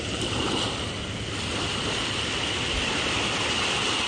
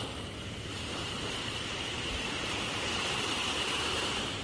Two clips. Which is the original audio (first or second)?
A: first